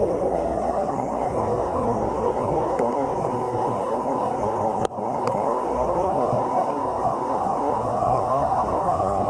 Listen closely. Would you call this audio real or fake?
fake